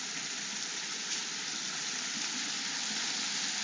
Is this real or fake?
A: real